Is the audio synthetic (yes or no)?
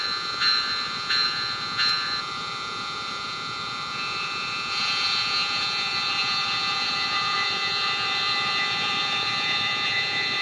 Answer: yes